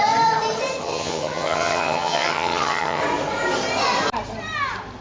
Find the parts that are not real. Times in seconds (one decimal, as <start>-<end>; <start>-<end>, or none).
0.8-3.0